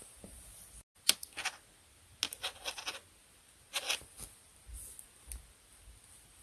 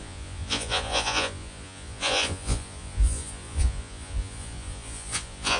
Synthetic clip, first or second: second